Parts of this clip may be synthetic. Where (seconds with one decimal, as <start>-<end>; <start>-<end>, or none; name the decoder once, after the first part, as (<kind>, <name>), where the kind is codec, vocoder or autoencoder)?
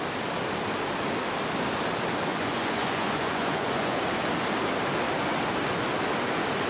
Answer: 2.3-4.0 (vocoder, Vocos)